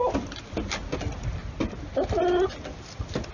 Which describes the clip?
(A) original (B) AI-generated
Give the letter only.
A